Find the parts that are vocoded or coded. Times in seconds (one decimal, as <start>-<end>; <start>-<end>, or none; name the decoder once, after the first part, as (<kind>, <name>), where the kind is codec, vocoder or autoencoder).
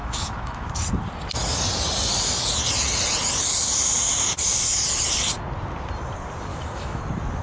0.0-0.7 (autoencoder, DAC-VAE); 6.5-7.0